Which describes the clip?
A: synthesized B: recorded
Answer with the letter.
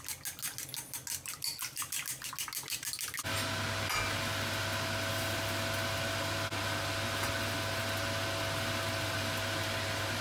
B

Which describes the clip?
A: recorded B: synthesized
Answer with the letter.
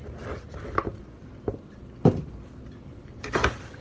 A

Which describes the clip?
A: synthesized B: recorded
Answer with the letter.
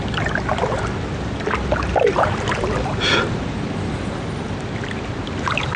B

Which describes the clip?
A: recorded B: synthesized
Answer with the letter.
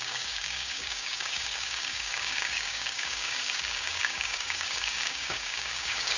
B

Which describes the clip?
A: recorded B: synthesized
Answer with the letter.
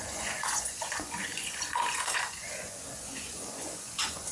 B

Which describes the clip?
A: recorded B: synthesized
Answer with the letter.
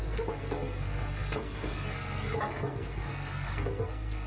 B